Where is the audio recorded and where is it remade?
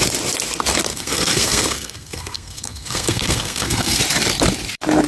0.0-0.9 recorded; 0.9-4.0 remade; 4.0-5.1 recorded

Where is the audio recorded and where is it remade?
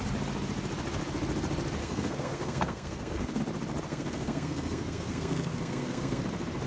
0.0-1.8 recorded; 1.8-3.4 remade; 3.4-3.9 recorded; 3.9-6.2 remade; 6.2-6.7 recorded